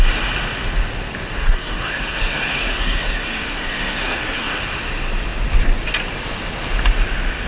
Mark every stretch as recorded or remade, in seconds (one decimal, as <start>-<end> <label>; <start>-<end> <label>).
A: 0.0-1.4 recorded; 1.4-4.6 remade; 4.6-7.5 recorded